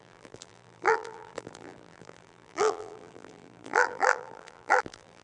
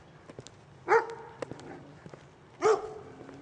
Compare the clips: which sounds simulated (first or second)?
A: first